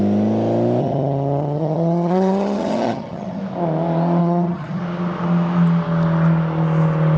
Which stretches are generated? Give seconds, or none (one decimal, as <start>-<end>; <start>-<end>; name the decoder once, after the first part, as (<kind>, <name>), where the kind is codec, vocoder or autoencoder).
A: 0.8-3.4 (vocoder, HiFi-GAN); 4.2-4.8